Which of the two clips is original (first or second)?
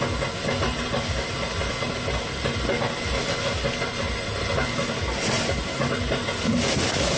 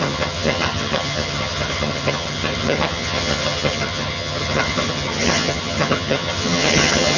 first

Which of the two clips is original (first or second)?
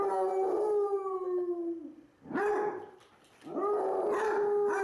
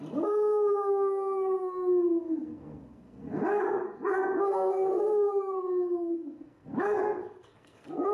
first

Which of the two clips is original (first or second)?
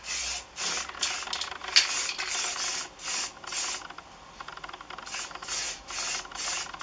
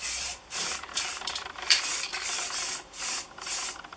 first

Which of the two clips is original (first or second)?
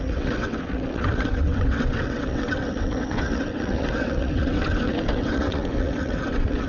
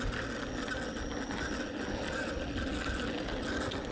second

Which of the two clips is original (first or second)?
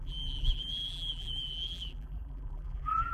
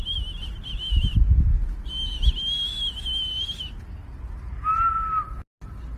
second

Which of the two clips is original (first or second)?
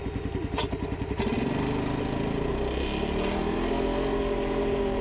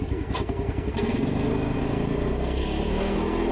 first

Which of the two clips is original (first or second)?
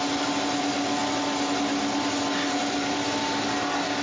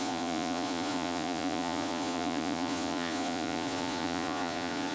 first